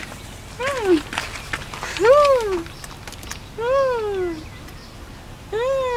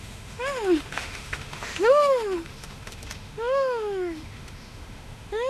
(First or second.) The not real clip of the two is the second